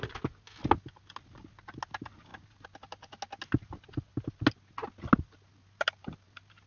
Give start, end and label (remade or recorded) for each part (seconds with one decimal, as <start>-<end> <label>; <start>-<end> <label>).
0.0-6.7 recorded